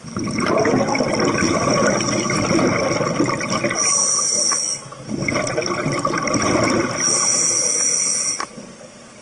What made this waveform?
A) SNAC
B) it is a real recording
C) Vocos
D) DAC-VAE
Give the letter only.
B